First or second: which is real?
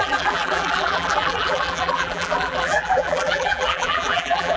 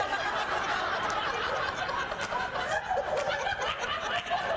second